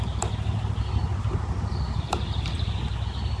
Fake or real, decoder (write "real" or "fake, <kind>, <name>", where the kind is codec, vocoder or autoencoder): real